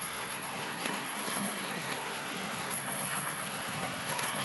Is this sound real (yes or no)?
no